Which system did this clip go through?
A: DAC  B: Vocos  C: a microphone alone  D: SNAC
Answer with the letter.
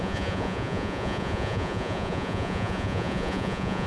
B